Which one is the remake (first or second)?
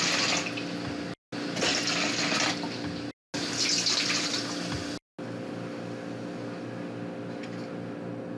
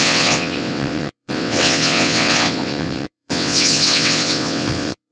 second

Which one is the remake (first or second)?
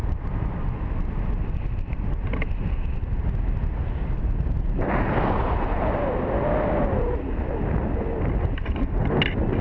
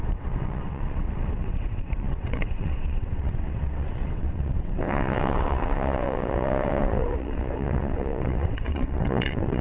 second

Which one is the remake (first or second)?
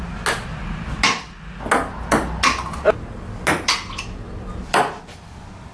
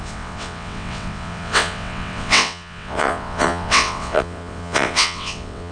second